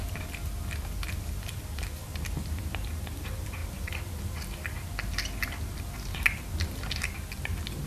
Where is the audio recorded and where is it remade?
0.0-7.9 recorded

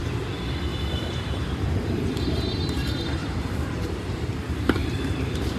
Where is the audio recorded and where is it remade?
0.0-0.7 recorded; 0.7-4.1 remade; 4.1-4.8 recorded; 4.8-5.6 remade

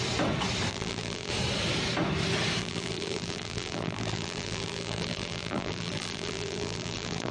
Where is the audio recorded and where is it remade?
0.0-0.7 recorded; 0.7-1.3 remade; 1.3-2.6 recorded; 2.6-7.3 remade

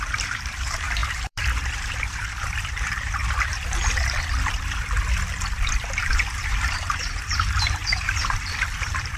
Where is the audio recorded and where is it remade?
0.0-3.2 remade; 3.2-6.1 recorded; 6.1-9.2 remade

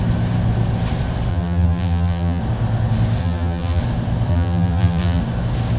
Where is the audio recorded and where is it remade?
0.0-1.3 recorded; 1.3-2.4 remade; 2.4-3.2 recorded; 3.2-3.8 remade; 3.8-4.3 recorded; 4.3-5.2 remade; 5.2-5.8 recorded

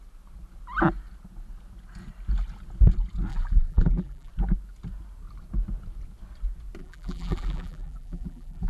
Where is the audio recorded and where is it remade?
0.0-3.3 recorded; 3.3-4.3 remade; 4.3-6.8 recorded; 6.8-8.7 remade

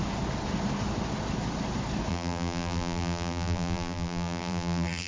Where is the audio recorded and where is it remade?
0.0-2.1 recorded; 2.1-5.1 remade